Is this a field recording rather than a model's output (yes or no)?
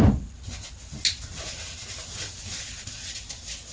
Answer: yes